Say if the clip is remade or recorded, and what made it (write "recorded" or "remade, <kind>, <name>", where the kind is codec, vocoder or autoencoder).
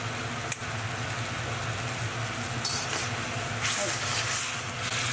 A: recorded